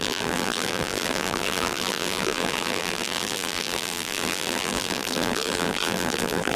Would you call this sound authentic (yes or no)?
no